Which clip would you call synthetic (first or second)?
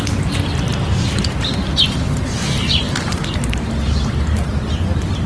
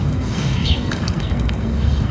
second